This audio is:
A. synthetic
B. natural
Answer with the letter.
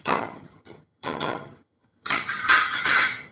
A